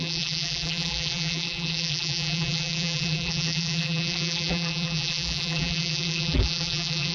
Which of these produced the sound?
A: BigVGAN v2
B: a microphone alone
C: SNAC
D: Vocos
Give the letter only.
A